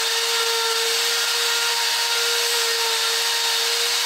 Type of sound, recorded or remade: recorded